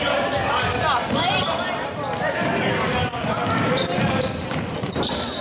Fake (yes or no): no